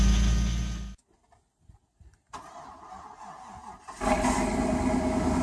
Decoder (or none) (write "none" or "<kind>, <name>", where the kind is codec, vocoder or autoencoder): none